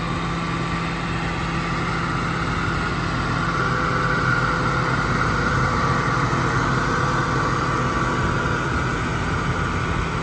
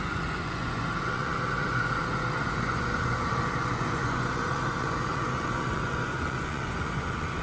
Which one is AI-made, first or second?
second